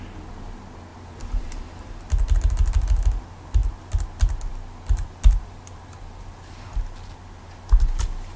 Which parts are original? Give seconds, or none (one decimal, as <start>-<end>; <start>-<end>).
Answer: 0.0-0.9; 1.9-8.4